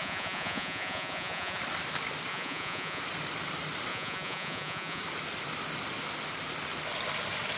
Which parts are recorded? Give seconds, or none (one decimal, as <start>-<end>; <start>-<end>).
1.6-2.3; 3.0-3.9; 5.0-7.6